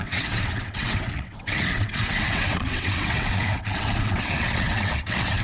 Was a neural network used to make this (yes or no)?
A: yes